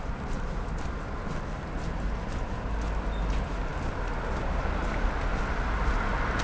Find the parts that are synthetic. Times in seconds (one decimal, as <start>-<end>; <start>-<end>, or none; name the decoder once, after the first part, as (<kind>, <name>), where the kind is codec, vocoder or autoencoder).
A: none